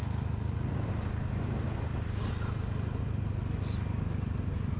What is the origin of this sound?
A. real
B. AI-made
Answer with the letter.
A